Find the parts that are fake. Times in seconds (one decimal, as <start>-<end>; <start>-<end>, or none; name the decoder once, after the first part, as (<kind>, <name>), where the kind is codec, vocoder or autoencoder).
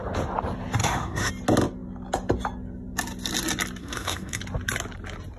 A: 0.8-1.3 (autoencoder, DAC-VAE); 3.8-4.4